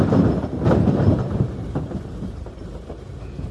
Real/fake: fake